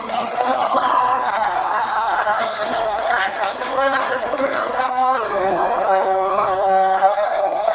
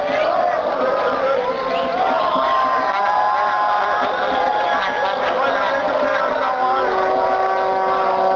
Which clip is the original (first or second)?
second